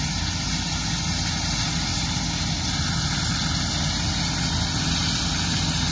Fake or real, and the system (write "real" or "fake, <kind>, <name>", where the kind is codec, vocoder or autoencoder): real